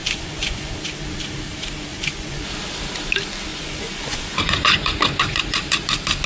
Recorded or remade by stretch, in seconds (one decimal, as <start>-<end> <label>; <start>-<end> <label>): 0.0-0.7 remade; 0.7-1.9 recorded; 1.9-2.5 remade; 2.5-3.5 recorded; 3.5-5.4 remade; 5.4-6.3 recorded